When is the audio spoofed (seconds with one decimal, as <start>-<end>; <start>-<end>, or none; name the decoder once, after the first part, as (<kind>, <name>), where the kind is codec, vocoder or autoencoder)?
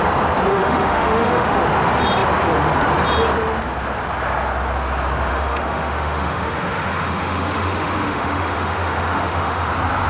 0.5-1.6 (autoencoder, DAC-VAE); 5.3-9.7